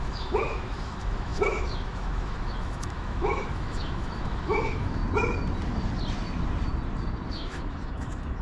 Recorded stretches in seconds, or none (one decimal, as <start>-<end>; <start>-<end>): 5.0-7.3